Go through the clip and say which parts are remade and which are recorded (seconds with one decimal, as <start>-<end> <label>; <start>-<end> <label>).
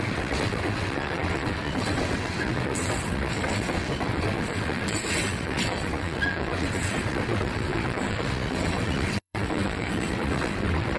0.0-11.0 remade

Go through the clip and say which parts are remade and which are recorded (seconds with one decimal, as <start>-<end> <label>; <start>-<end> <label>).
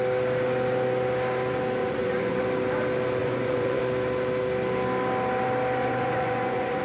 0.0-1.8 recorded; 1.8-2.4 remade; 2.4-3.2 recorded; 3.2-3.8 remade; 3.8-5.8 recorded; 5.8-6.8 remade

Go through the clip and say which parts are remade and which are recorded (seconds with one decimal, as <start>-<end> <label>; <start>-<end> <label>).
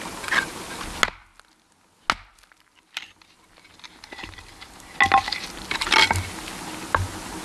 0.0-7.4 recorded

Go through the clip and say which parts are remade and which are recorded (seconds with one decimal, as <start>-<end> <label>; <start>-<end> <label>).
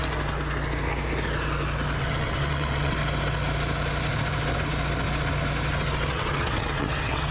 0.0-2.0 recorded; 2.0-3.0 remade; 3.0-6.1 recorded; 6.1-7.3 remade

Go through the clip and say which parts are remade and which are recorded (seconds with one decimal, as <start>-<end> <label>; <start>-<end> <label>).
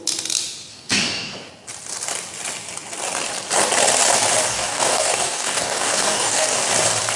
0.0-0.7 recorded; 0.7-1.5 remade; 1.5-4.5 recorded; 4.5-6.6 remade; 6.6-7.2 recorded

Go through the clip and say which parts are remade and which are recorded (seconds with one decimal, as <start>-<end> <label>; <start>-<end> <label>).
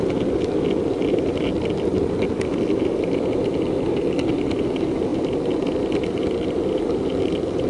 0.0-7.7 recorded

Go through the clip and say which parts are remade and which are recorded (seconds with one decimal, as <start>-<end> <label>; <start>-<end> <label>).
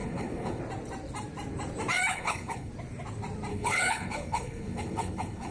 0.0-0.6 remade; 0.6-2.1 recorded; 2.1-2.7 remade; 2.7-3.5 recorded; 3.5-5.5 remade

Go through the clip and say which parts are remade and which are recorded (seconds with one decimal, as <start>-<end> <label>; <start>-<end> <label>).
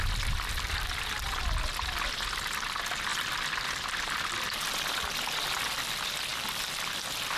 0.0-3.1 recorded; 3.1-5.1 remade; 5.1-6.3 recorded; 6.3-7.0 remade; 7.0-7.4 recorded